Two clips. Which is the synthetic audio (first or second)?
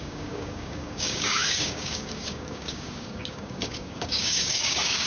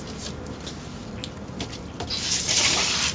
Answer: first